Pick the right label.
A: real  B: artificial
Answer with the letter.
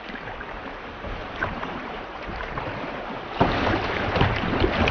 B